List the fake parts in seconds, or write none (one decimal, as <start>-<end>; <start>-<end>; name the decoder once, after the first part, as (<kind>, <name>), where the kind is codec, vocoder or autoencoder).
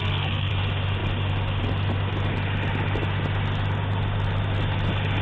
0.0-0.5 (codec, SNAC)